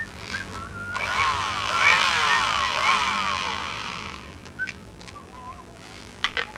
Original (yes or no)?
no